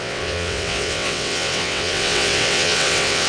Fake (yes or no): yes